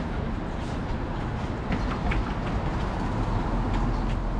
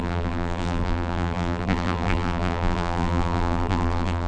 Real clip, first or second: first